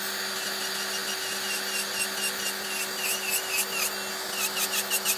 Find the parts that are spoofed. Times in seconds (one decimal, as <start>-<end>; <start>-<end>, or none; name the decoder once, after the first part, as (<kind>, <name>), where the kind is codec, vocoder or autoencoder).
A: none

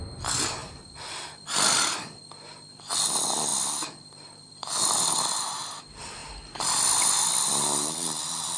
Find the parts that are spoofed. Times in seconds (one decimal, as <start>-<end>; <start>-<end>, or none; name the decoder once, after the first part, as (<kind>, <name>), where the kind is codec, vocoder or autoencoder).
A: none

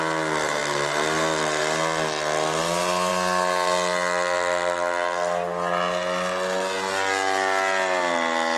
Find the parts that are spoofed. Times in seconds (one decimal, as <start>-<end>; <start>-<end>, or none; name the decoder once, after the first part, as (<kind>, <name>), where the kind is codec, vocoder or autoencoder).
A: none

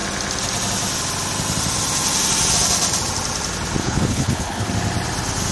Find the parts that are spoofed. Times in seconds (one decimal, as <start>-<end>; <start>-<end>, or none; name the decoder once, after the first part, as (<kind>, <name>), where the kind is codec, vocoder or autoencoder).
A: 3.8-4.7 (codec, HILCodec)

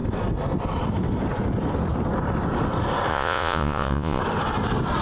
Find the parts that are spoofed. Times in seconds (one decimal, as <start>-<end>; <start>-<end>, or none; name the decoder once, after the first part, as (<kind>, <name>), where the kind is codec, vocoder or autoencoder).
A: 3.1-4.2 (vocoder, Vocos)

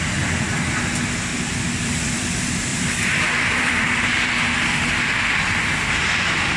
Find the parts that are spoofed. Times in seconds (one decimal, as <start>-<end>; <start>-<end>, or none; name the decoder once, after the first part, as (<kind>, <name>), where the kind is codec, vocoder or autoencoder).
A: 1.3-2.3 (vocoder, BigVGAN v2); 2.7-6.6

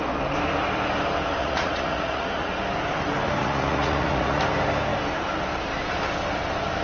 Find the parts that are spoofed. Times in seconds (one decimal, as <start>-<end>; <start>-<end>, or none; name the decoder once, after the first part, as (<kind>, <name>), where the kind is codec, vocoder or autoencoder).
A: 1.4-2.5 (vocoder, Vocos); 3.4-4.4

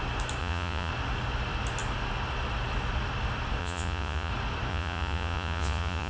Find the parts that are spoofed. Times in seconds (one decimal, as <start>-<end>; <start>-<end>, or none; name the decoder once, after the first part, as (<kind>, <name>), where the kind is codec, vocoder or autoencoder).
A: 0.4-0.9 (vocoder, Vocos); 3.6-4.3; 4.7-6.1